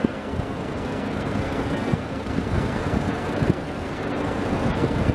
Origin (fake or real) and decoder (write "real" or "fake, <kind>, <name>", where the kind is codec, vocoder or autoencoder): fake, codec, SNAC